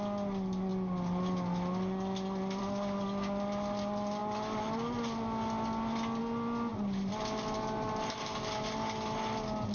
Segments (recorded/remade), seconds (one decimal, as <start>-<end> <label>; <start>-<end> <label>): 0.0-9.7 recorded

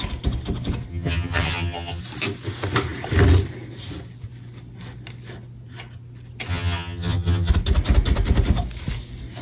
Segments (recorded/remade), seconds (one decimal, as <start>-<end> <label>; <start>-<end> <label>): 0.0-0.9 recorded; 0.9-2.0 remade; 2.0-6.5 recorded; 6.5-7.5 remade; 7.5-9.4 recorded

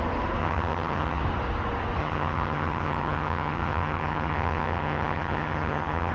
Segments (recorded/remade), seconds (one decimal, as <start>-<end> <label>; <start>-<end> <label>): 0.0-0.4 recorded; 0.4-1.2 remade; 1.2-2.0 recorded; 2.0-6.1 remade

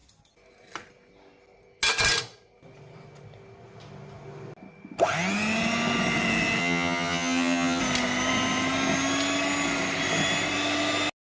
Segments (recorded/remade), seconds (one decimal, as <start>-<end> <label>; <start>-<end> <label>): 0.0-6.6 recorded; 6.6-7.8 remade; 7.8-11.2 recorded

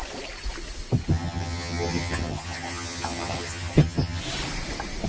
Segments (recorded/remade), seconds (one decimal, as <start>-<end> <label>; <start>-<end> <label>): 0.0-1.1 recorded; 1.1-4.2 remade; 4.2-5.1 recorded

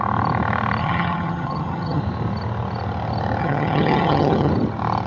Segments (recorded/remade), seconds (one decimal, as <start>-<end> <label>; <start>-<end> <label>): 0.0-0.8 recorded; 0.8-2.0 remade; 2.0-3.4 recorded; 3.4-4.5 remade; 4.5-5.1 recorded

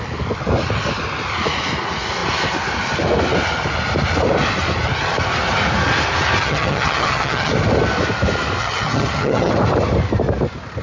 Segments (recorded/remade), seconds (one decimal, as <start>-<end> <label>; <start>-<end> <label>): 0.0-6.4 recorded; 6.4-7.5 remade; 7.5-8.6 recorded; 8.6-9.5 remade; 9.5-10.8 recorded